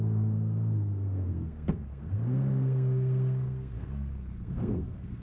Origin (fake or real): fake